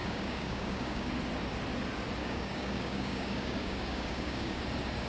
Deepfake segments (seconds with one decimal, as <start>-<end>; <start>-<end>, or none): 0.0-1.1; 2.2-4.6